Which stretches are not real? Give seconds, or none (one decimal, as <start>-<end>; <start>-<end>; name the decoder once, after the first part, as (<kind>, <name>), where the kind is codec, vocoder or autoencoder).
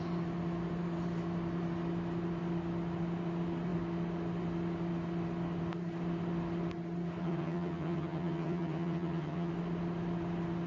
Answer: 7.2-9.5 (vocoder, HiFi-GAN)